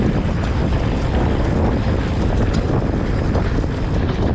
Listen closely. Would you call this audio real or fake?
real